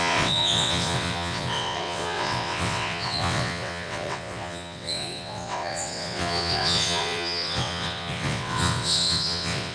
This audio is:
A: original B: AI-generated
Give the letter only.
B